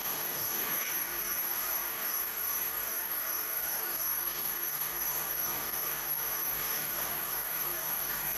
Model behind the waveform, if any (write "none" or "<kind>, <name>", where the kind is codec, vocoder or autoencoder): codec, DAC